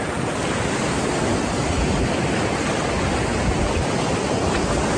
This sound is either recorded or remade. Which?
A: recorded